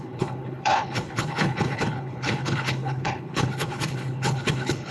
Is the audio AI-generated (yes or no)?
yes